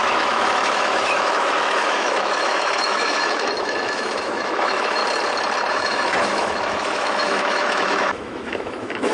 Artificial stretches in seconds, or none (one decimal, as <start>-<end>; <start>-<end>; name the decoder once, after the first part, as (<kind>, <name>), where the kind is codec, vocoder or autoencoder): 0.0-5.0 (autoencoder, DAC-VAE); 5.7-9.1